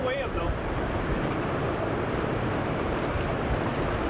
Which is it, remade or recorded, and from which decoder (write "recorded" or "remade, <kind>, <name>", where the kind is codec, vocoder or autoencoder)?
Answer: remade, vocoder, BigVGAN v2